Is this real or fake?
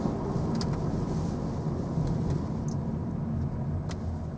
real